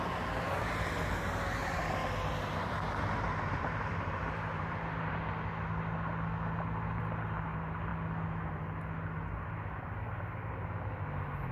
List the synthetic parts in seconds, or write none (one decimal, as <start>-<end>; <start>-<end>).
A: 1.6-5.4